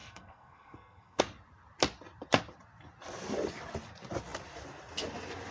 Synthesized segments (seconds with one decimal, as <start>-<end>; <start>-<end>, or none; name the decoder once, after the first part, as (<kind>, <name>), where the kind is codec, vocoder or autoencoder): 0.0-1.2 (codec, SNAC)

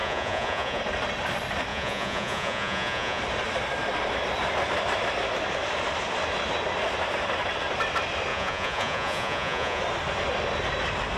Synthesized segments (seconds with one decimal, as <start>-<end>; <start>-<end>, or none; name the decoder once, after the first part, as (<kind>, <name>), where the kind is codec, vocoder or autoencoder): 0.0-0.8 (vocoder, Vocos); 1.7-3.2; 8.3-9.8

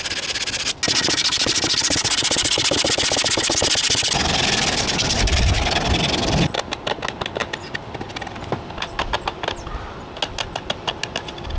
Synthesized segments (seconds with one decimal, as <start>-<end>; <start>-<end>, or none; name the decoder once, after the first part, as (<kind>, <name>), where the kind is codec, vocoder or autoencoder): none

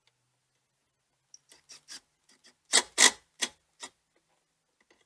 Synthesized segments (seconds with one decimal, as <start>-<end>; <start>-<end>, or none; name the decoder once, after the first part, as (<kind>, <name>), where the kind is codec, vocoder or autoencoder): none